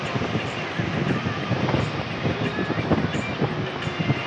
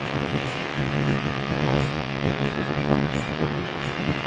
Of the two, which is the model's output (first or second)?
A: second